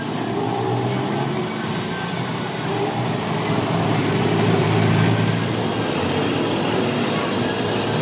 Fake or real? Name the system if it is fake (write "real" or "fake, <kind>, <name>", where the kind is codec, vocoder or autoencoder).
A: real